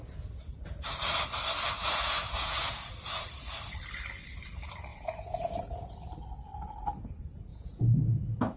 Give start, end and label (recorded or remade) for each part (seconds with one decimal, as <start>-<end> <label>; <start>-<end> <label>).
0.0-1.8 recorded; 1.8-2.9 remade; 2.9-4.9 recorded; 4.9-5.9 remade; 5.9-7.5 recorded; 7.5-8.0 remade; 8.0-8.6 recorded